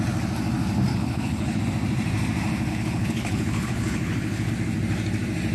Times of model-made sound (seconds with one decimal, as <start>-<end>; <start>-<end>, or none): 0.9-1.6; 2.7-4.5